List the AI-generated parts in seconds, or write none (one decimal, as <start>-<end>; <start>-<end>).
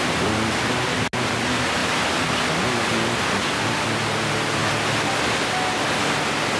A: none